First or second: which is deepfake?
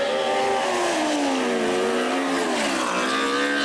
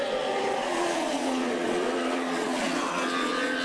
second